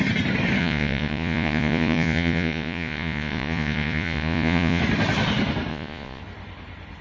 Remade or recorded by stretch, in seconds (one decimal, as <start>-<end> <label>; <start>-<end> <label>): 0.0-0.6 recorded; 0.6-4.8 remade; 4.8-5.7 recorded; 5.7-6.2 remade; 6.2-7.0 recorded